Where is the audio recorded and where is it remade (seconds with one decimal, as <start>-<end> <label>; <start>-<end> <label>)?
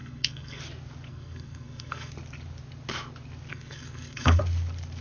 0.0-0.6 remade; 0.6-1.1 recorded; 1.1-2.1 remade; 2.1-3.5 recorded; 3.5-4.4 remade; 4.4-5.0 recorded